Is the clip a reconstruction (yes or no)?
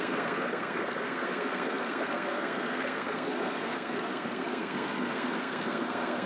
yes